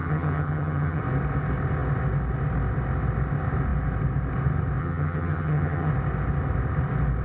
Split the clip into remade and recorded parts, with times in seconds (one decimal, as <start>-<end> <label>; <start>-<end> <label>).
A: 0.0-1.0 remade; 1.0-4.8 recorded; 4.8-5.9 remade; 5.9-7.2 recorded